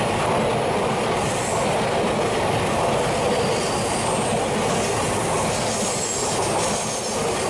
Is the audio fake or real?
real